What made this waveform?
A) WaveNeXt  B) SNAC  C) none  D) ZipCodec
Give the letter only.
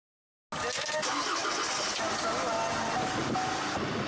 C